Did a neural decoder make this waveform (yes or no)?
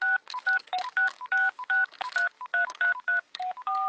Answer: yes